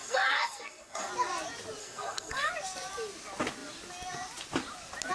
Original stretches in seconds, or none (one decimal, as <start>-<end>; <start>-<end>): 1.1-1.8; 2.5-5.1